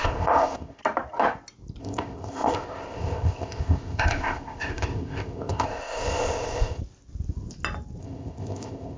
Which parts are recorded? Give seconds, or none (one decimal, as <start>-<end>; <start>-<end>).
0.8-1.8; 6.8-8.0